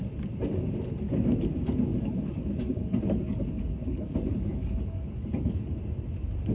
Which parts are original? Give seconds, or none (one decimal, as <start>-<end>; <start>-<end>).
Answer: 0.0-1.9; 5.8-6.5